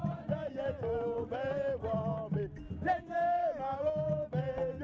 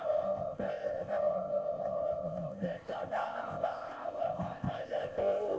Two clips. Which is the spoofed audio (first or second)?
second